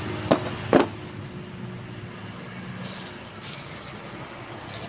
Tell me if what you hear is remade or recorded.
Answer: recorded